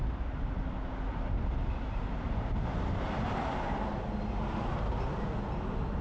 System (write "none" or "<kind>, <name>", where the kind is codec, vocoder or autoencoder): none